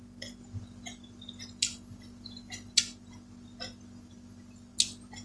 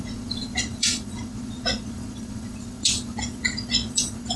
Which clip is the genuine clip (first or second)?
first